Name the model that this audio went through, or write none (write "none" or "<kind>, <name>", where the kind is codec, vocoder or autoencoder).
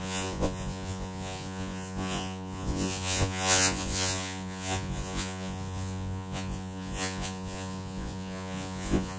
vocoder, Vocos